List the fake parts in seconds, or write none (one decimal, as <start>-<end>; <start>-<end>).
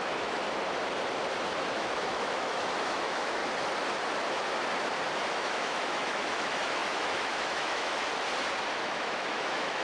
0.0-0.4; 1.7-3.4; 5.3-8.1; 8.8-9.8